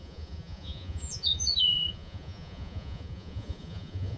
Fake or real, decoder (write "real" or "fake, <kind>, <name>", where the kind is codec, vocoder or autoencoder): fake, vocoder, Vocos